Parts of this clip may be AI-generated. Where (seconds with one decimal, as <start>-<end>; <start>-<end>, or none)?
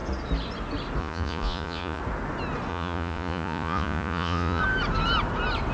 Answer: 1.0-2.0; 2.7-4.6